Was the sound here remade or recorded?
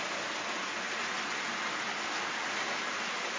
recorded